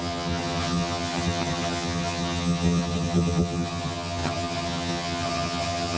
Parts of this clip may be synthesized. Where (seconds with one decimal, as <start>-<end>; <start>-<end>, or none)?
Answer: 0.0-6.0